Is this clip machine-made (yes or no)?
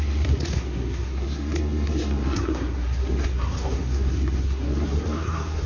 yes